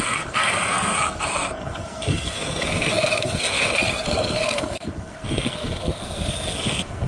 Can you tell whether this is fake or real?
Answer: fake